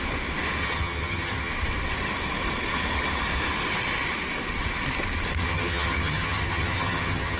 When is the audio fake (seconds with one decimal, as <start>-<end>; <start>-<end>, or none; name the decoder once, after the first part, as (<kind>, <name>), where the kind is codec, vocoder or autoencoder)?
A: 0.6-1.5 (vocoder, HiFi-GAN); 5.4-7.4